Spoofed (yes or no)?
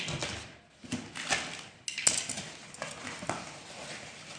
no